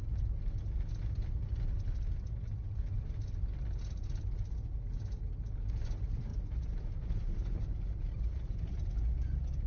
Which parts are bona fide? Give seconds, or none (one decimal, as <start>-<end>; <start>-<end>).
0.0-9.7